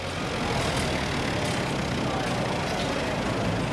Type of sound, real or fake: real